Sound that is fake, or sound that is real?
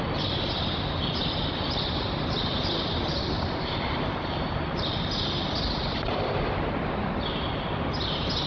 real